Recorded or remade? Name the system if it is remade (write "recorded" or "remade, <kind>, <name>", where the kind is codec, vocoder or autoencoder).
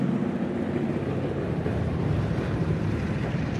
remade, vocoder, BigVGAN v2